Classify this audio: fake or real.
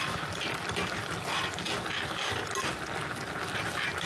real